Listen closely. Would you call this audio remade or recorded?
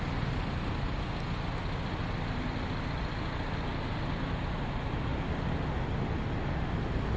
recorded